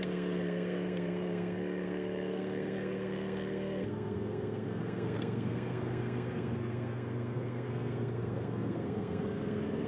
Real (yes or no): no